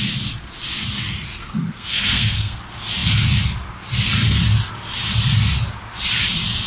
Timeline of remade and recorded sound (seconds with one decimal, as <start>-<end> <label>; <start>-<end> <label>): 0.0-1.4 recorded; 1.4-2.6 remade; 2.6-6.7 recorded